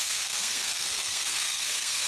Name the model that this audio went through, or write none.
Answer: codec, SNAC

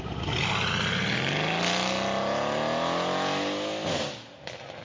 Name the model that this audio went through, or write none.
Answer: none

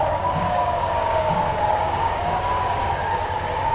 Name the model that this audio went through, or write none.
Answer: codec, DAC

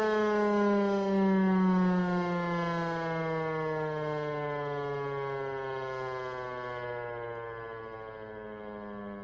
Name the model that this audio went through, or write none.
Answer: none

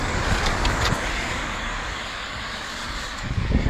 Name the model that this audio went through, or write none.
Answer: codec, DAC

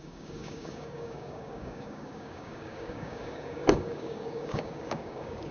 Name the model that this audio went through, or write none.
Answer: codec, DAC